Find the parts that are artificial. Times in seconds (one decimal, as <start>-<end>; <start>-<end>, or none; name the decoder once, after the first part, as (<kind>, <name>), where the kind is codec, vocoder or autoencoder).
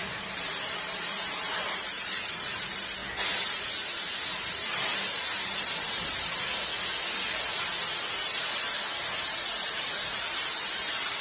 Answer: 0.0-3.0 (vocoder, BigVGAN v2); 4.4-6.7; 8.1-11.2